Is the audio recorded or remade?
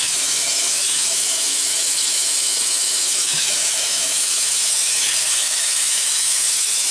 remade